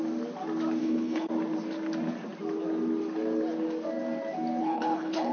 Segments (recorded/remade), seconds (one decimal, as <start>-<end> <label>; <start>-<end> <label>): 0.0-0.8 recorded; 0.8-1.3 remade; 1.3-4.6 recorded; 4.6-5.3 remade